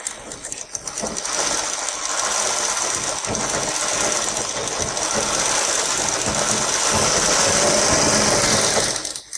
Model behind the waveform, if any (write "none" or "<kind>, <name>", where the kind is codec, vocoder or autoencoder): none